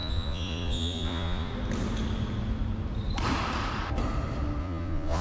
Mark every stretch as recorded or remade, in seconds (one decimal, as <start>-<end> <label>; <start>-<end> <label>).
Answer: 0.0-1.5 remade; 1.5-4.6 recorded; 4.6-5.2 remade

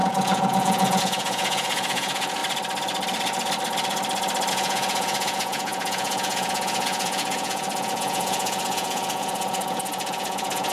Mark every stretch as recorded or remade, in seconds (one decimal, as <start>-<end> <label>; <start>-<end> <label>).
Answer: 0.0-2.4 remade; 2.4-4.5 recorded; 4.5-10.7 remade

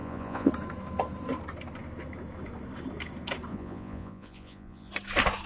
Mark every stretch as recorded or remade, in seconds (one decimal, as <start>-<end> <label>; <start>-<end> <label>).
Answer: 0.0-0.5 remade; 0.5-3.5 recorded; 3.5-4.9 remade; 4.9-5.5 recorded

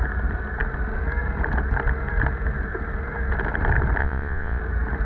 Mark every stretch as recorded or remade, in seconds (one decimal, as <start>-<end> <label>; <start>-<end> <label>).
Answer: 0.0-4.0 recorded; 4.0-4.6 remade; 4.6-5.0 recorded

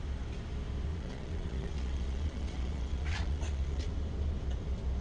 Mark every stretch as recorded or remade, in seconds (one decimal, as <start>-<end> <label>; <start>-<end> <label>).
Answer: 0.0-0.9 recorded; 0.9-3.9 remade; 3.9-5.0 recorded

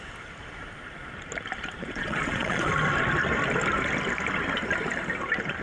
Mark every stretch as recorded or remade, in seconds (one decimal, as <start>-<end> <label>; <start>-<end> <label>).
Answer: 0.0-1.8 recorded; 1.8-2.7 remade; 2.7-5.6 recorded

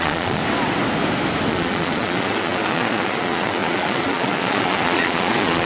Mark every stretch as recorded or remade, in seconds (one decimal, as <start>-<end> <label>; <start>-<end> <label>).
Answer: 0.0-0.4 remade; 0.4-1.5 recorded; 1.5-5.7 remade